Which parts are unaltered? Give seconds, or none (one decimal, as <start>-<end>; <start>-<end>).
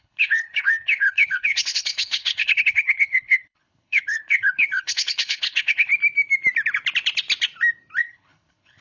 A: 5.9-8.0